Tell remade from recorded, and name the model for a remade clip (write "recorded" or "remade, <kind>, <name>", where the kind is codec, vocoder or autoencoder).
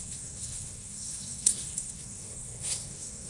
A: remade, codec, SNAC